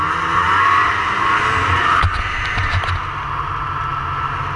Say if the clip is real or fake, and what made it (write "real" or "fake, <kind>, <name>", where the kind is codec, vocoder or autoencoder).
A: real